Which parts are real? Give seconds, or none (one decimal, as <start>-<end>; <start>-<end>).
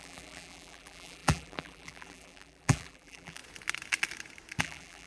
3.4-4.6